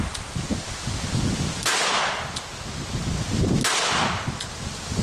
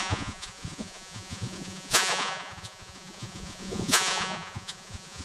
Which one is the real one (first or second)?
first